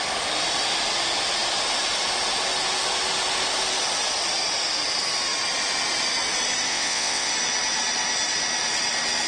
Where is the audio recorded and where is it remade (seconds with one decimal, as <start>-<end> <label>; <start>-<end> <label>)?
0.0-6.7 recorded; 6.7-7.3 remade; 7.3-9.3 recorded